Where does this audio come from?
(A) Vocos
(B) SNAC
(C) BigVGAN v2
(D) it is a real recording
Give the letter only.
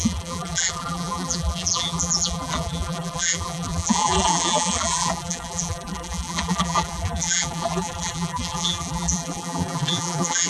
C